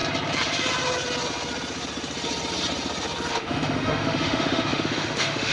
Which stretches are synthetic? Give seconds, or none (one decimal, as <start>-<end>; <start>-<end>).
3.3-5.5